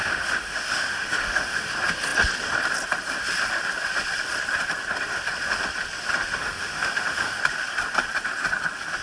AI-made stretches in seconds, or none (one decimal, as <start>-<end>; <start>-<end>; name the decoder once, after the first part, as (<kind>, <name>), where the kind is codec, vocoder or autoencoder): 0.0-1.7 (autoencoder, DAC-VAE); 6.4-7.4